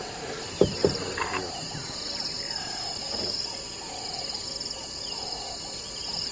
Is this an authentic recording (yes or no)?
yes